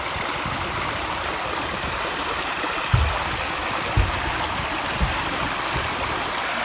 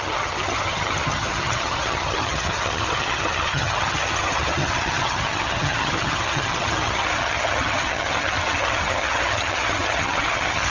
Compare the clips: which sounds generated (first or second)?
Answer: second